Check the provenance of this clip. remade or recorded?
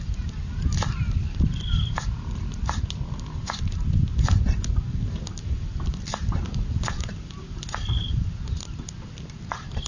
recorded